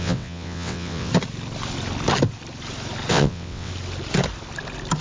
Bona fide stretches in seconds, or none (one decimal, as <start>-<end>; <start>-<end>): 1.1-3.1; 3.7-5.0